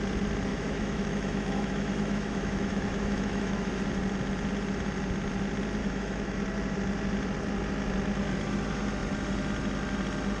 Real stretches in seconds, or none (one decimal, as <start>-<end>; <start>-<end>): 0.0-0.5; 3.7-5.8; 6.4-10.4